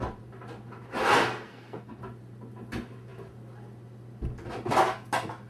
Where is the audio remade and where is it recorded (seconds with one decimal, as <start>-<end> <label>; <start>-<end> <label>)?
0.0-1.2 recorded; 1.2-2.0 remade; 2.0-5.5 recorded